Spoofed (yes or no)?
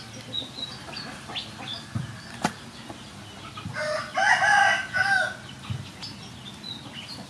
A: no